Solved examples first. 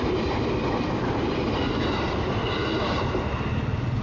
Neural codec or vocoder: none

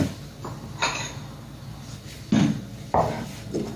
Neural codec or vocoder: none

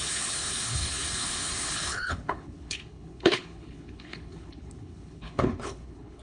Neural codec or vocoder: codec, HILCodec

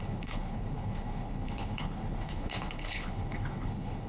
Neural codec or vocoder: codec, HILCodec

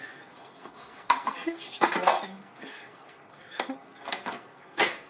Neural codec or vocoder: codec, SNAC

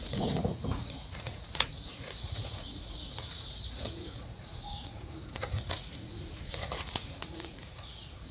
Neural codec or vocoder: vocoder, Vocos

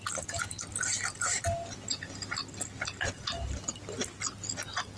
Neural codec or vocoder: none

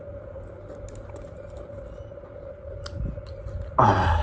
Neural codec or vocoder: none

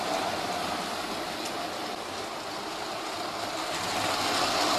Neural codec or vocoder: none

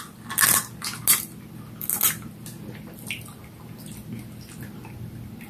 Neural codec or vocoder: none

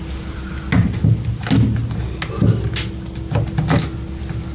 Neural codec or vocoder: none